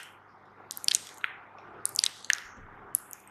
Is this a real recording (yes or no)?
yes